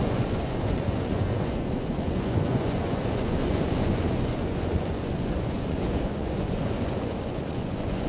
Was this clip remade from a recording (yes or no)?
yes